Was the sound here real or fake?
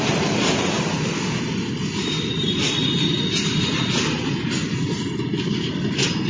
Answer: real